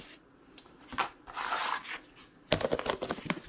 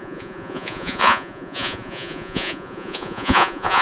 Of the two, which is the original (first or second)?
first